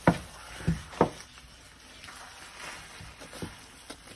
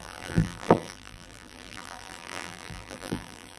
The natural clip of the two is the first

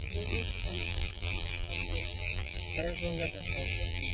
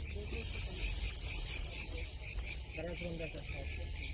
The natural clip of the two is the second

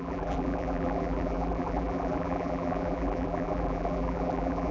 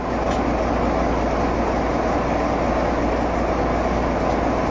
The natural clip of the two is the second